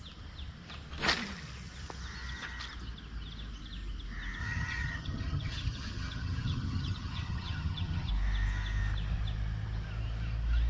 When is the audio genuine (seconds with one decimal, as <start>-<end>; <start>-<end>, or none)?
0.0-4.4; 8.1-10.7